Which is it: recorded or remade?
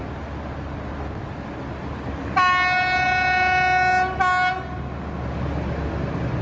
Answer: recorded